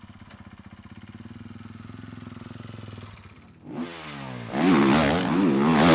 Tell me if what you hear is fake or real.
real